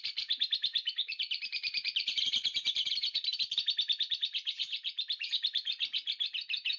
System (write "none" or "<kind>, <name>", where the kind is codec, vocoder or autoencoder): vocoder, BigVGAN v2